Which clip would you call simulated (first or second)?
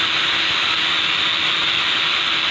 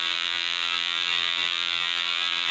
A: second